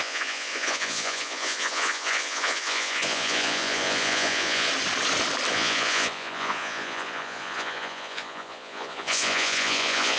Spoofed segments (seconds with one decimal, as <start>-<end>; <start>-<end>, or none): 0.0-4.7; 5.5-10.2